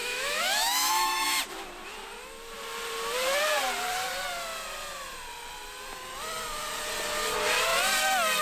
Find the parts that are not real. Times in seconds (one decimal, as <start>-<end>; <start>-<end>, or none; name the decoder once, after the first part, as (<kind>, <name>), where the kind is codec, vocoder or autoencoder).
0.0-1.4 (autoencoder, DAC-VAE)